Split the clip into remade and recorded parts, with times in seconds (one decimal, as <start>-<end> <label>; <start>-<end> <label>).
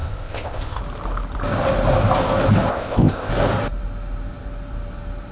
0.0-0.8 remade; 0.8-2.7 recorded; 2.7-3.3 remade; 3.3-5.3 recorded